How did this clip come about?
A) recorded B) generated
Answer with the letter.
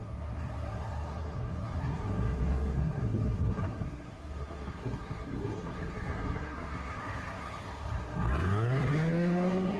B